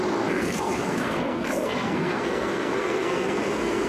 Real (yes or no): no